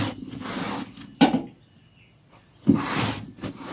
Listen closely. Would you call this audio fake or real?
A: fake